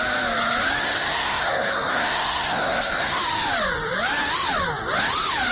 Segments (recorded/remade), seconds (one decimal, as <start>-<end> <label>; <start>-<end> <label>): 0.0-0.8 recorded; 0.8-3.2 remade; 3.2-5.5 recorded